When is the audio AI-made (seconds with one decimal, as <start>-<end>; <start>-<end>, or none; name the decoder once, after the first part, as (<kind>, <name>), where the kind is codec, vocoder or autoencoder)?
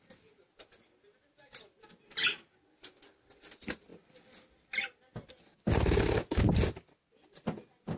none